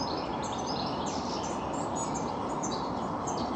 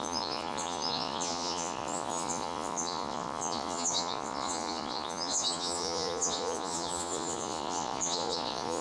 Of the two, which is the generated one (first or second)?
second